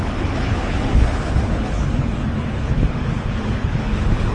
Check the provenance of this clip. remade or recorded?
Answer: remade